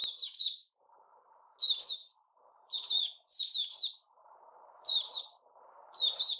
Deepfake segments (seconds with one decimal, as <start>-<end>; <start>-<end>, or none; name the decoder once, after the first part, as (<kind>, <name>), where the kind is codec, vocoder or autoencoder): 0.0-1.6 (vocoder, BigVGAN v2); 2.0-5.8